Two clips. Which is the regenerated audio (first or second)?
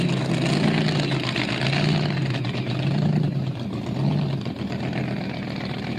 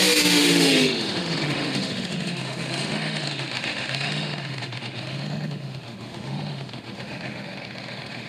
second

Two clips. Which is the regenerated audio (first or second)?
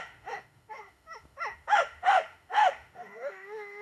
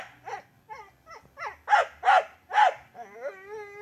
first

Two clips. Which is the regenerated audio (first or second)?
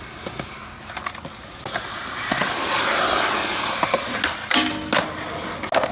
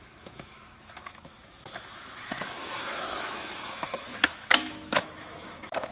second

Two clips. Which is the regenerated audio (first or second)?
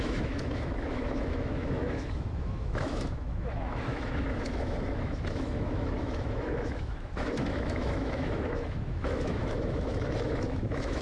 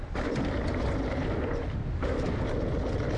first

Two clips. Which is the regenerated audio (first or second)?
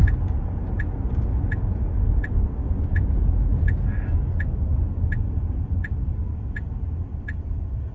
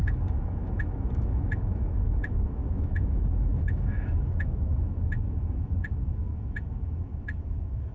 second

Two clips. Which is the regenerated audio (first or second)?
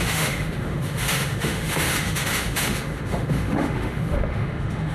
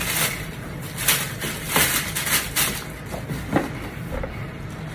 first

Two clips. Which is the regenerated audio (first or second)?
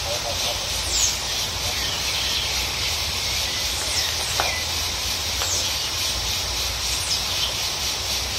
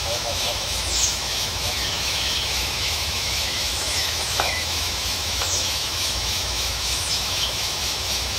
second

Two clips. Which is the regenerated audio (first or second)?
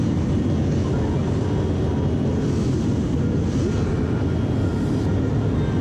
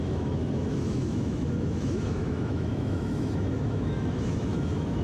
second